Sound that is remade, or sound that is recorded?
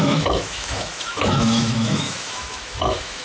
remade